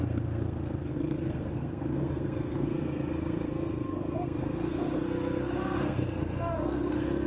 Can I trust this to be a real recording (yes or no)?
no